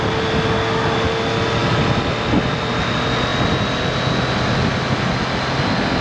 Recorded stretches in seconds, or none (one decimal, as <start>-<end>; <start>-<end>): 0.0-6.0